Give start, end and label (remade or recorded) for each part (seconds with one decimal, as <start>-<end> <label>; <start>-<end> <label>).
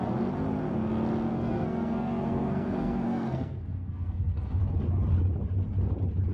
0.0-1.3 recorded; 1.3-4.6 remade; 4.6-6.3 recorded